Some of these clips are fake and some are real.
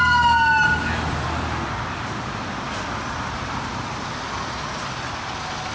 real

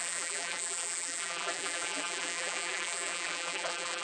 fake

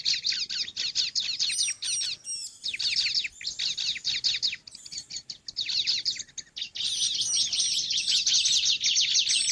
real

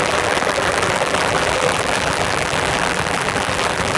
fake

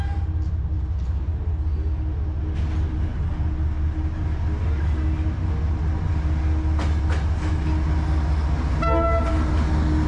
real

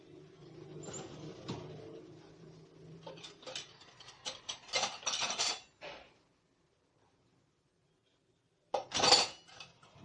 real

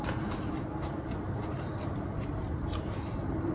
fake